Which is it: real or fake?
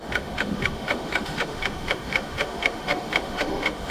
fake